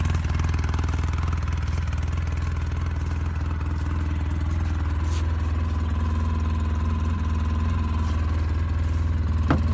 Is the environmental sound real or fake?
real